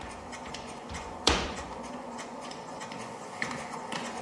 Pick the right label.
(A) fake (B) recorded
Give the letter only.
A